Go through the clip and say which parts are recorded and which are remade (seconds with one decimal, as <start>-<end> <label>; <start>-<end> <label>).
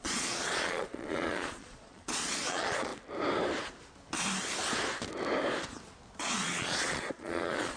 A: 0.0-2.9 remade; 2.9-6.2 recorded; 6.2-7.8 remade